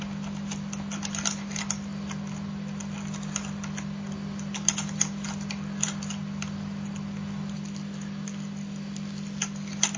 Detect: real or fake real